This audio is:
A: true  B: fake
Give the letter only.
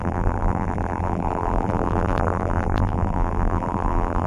B